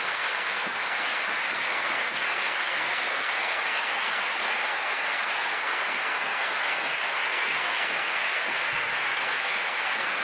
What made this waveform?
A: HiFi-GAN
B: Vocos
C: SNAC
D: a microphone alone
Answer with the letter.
C